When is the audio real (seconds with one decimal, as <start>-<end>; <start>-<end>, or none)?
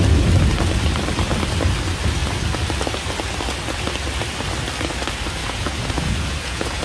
0.0-5.4